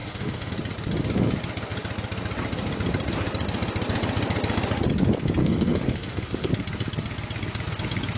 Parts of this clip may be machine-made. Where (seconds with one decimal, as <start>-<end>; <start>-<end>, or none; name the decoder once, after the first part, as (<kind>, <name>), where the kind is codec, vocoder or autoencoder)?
0.0-0.5 (autoencoder, DAC-VAE); 5.4-6.5